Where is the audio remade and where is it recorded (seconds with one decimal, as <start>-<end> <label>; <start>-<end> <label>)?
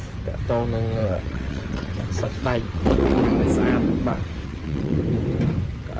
0.0-1.0 recorded; 1.0-3.2 remade; 3.2-4.1 recorded; 4.1-5.0 remade; 5.0-6.0 recorded